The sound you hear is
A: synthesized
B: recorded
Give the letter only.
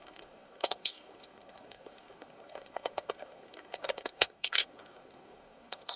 A